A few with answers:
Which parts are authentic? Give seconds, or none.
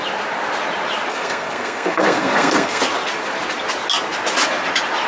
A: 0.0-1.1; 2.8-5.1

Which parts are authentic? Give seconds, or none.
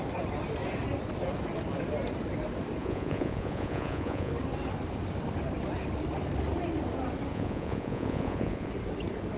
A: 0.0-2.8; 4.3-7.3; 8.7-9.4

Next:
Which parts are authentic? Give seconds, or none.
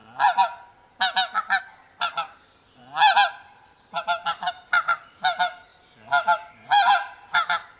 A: 0.0-1.6; 2.8-3.3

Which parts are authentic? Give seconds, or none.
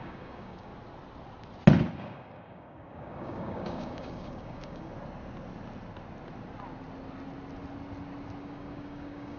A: 0.7-2.0; 4.9-8.4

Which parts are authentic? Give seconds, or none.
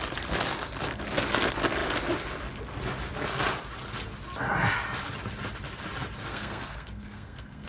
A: 0.0-6.3